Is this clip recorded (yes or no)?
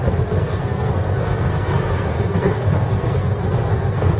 no